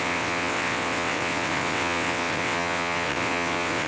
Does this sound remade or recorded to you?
remade